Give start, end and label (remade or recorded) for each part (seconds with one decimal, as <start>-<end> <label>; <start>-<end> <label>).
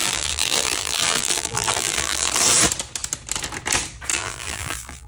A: 0.0-2.3 remade; 2.3-4.1 recorded; 4.1-5.1 remade